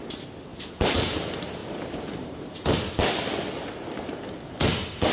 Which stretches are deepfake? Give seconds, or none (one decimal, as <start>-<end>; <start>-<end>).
0.5-1.2; 1.6-2.4